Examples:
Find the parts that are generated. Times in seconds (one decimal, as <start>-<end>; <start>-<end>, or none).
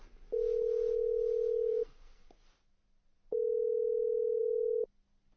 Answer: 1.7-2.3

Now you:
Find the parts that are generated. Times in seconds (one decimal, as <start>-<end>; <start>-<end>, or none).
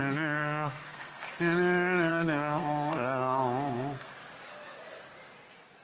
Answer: 0.0-1.3; 2.1-4.1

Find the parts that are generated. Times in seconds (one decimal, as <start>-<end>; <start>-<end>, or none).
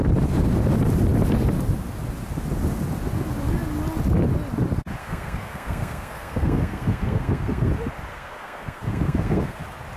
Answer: 5.0-7.7; 8.1-9.6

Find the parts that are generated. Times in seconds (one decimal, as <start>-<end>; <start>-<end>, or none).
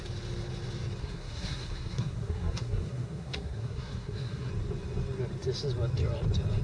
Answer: 1.0-4.5